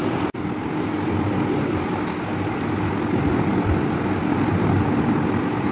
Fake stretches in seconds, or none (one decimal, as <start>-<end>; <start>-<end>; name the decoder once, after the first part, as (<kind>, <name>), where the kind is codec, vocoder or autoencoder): none